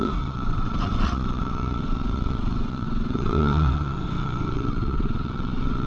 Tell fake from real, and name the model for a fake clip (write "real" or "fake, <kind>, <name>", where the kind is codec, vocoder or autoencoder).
fake, vocoder, WaveNeXt